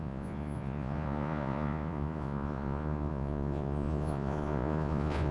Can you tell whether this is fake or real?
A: fake